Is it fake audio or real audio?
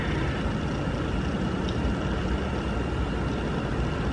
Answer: real